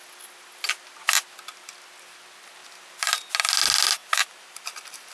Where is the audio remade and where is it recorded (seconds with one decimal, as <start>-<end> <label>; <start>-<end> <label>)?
0.0-2.6 recorded; 2.6-3.1 remade; 3.1-4.0 recorded; 4.0-5.1 remade